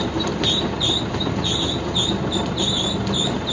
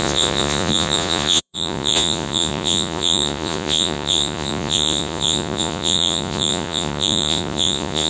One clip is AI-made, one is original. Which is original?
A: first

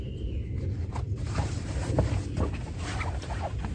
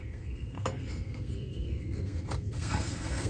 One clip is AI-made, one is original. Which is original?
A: first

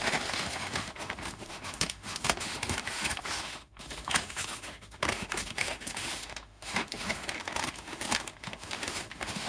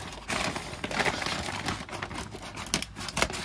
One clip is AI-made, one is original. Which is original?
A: second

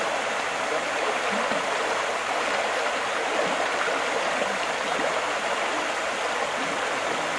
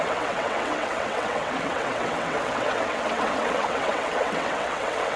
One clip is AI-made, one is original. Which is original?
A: first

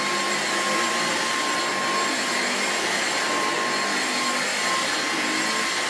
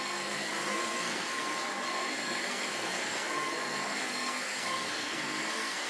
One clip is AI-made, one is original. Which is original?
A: first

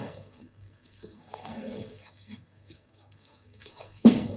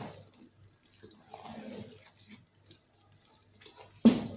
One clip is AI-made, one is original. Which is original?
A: second